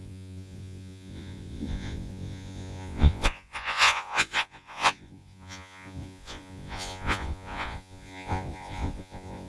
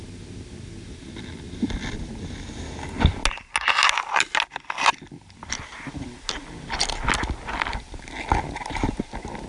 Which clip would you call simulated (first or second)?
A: first